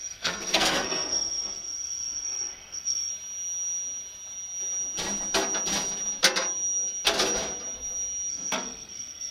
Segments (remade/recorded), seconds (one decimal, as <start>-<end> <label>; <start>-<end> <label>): 0.0-3.1 remade; 3.1-8.3 recorded; 8.3-9.3 remade